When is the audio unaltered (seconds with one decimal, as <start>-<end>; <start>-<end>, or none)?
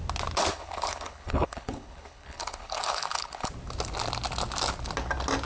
0.0-0.5; 3.5-5.5